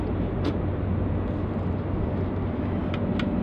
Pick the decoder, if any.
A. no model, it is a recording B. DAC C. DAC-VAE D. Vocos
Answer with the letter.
A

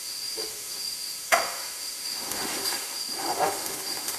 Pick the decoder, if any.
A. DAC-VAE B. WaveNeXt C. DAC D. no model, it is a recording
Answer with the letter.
A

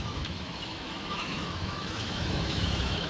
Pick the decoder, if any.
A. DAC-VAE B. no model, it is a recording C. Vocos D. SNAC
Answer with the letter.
A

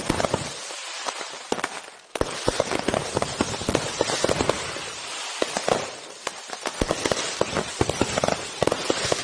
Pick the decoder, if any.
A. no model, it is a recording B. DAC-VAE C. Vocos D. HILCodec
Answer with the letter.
A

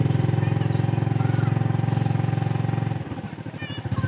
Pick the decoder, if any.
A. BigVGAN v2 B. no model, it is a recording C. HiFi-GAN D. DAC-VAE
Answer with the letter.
B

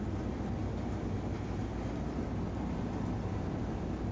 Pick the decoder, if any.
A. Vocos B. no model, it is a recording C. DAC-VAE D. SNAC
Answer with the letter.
B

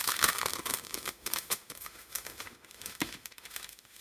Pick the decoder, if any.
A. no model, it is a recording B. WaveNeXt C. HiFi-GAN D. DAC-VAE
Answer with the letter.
D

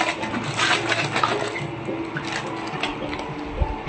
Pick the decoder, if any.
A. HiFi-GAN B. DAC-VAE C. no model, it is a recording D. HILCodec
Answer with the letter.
C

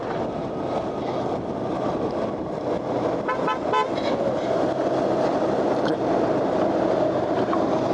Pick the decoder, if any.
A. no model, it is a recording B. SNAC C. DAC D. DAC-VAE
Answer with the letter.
A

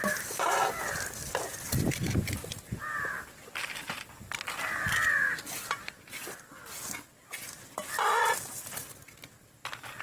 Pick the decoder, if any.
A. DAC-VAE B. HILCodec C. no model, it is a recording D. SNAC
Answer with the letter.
C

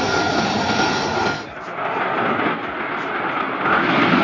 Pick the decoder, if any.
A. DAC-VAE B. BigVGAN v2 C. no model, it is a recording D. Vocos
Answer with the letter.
C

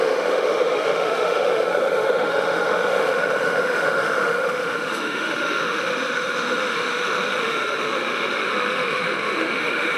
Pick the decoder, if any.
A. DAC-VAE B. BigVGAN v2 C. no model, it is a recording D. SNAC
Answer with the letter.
A